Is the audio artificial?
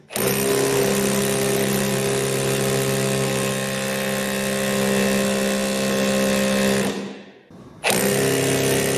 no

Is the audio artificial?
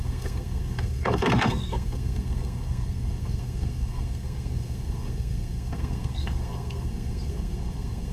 yes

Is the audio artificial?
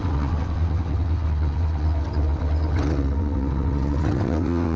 yes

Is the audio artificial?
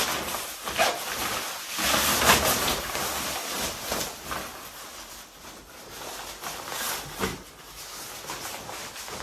no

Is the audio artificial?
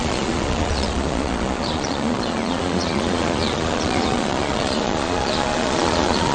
yes